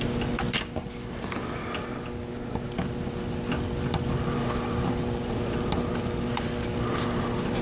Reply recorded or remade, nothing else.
recorded